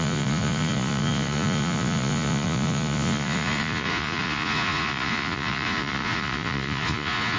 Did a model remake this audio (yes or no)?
yes